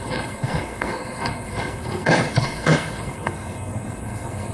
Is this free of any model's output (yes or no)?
no